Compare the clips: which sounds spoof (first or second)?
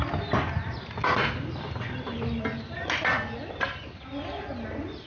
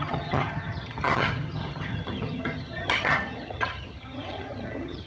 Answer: second